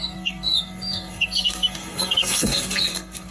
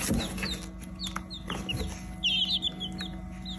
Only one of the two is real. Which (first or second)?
second